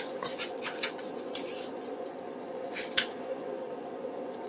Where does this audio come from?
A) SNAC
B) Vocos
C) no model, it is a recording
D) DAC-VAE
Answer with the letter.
B